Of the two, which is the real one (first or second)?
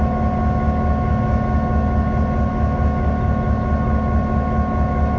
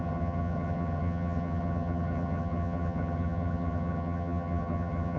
first